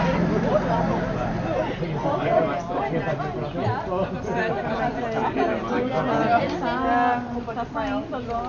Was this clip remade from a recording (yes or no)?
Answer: no